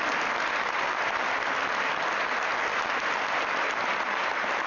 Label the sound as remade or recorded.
recorded